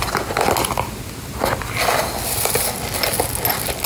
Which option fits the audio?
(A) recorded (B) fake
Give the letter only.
A